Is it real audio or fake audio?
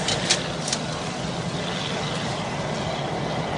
fake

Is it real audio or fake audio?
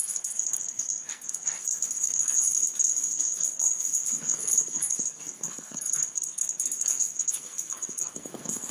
fake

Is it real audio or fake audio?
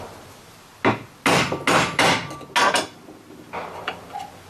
real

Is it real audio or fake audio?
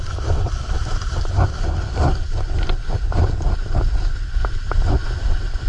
real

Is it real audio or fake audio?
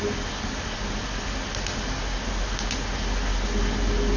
real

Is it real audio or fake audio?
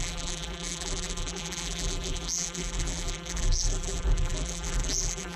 fake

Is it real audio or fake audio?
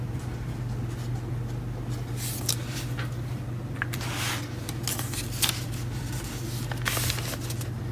real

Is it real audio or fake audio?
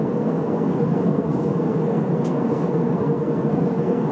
fake